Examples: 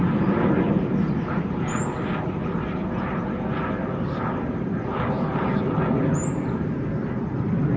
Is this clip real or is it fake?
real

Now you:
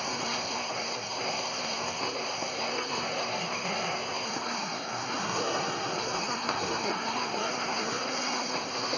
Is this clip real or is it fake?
fake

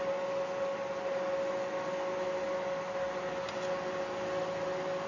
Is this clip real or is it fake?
real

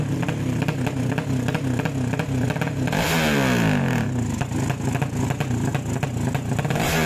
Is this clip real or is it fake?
real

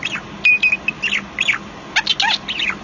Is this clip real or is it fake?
real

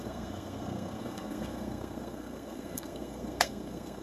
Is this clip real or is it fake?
fake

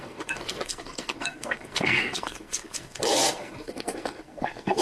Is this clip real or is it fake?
fake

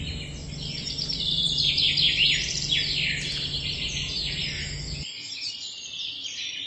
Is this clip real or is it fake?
real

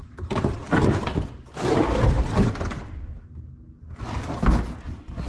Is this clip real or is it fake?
real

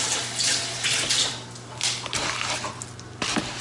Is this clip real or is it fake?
real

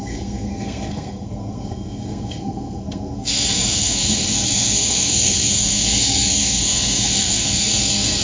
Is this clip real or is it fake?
fake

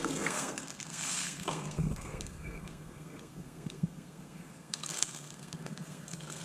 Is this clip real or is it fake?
fake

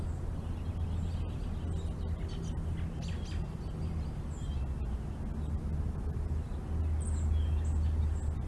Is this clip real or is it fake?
real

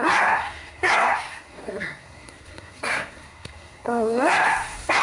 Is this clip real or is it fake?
fake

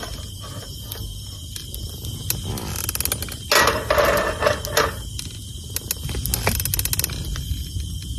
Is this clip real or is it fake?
real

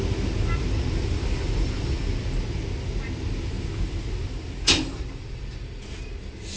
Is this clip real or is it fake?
real